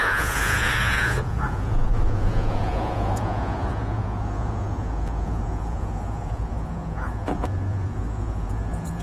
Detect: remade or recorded remade